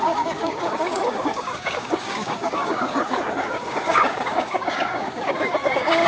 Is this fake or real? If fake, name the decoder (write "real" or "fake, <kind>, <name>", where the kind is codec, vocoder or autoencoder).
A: fake, codec, DAC